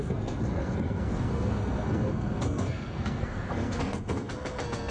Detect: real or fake fake